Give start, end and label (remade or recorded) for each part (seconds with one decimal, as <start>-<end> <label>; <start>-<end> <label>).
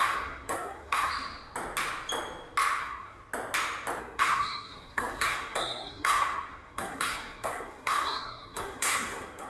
0.0-1.1 remade; 1.1-2.8 recorded; 2.8-3.2 remade; 3.2-4.0 recorded; 4.0-9.5 remade